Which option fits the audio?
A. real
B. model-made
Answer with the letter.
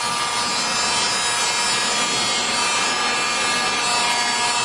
A